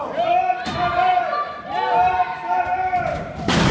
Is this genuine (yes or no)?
yes